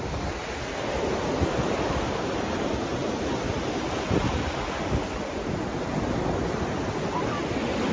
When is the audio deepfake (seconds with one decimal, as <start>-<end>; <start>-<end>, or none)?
none